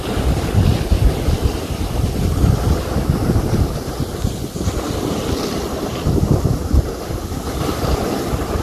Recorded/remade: recorded